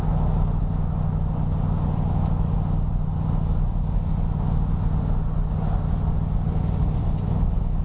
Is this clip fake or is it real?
real